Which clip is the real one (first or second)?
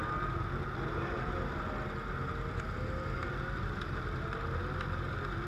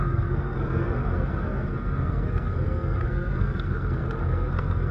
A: first